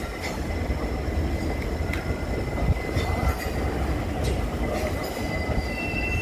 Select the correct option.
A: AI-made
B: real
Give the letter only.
B